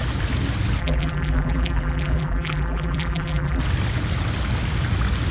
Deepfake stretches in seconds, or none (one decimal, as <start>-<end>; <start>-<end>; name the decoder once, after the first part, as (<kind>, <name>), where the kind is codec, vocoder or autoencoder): 0.8-3.6 (vocoder, BigVGAN v2)